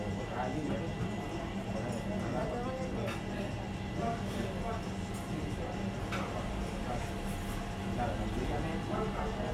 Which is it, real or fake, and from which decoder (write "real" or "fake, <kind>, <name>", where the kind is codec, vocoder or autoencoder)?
real